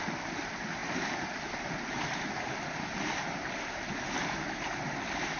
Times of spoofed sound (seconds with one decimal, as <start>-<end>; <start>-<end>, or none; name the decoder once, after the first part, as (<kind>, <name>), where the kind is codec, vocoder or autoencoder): 0.8-4.0 (vocoder, BigVGAN v2)